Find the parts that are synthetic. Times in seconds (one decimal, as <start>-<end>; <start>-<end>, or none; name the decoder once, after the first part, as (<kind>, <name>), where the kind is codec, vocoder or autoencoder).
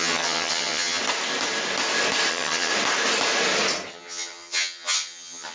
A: 0.0-1.0 (vocoder, HiFi-GAN); 2.3-2.7; 3.9-5.5